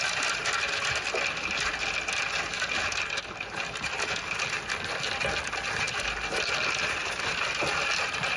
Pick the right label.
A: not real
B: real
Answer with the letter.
B